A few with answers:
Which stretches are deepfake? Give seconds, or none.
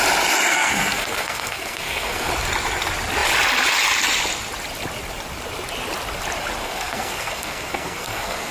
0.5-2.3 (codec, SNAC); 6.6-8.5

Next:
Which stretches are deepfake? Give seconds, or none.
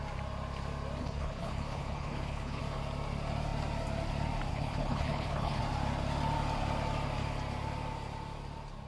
1.0-2.6 (codec, HILCodec); 4.5-5.6